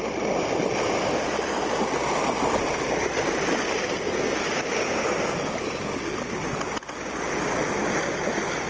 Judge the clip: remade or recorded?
recorded